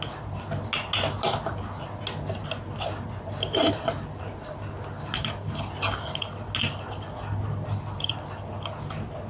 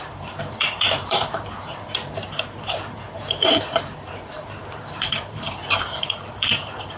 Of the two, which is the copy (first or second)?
second